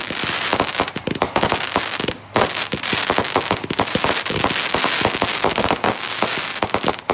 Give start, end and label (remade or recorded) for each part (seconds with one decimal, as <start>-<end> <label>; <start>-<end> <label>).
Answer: 0.0-5.3 recorded; 5.3-6.1 remade; 6.1-7.1 recorded